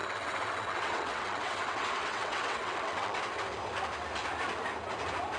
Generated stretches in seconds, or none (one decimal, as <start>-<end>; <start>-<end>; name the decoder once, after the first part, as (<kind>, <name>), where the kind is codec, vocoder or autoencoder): 0.0-3.2 (vocoder, WaveNeXt)